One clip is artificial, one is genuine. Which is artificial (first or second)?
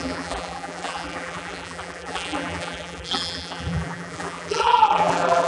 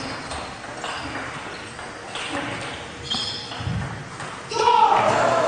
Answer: first